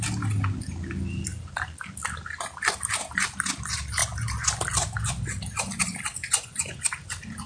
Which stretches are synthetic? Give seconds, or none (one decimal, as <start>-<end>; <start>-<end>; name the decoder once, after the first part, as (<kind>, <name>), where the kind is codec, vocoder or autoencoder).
6.2-6.8 (vocoder, Vocos)